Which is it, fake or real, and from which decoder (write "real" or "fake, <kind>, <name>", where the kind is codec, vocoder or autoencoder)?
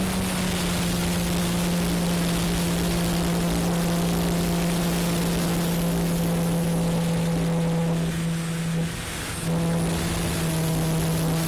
real